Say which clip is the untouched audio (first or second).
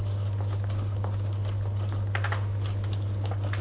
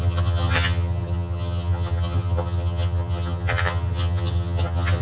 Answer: first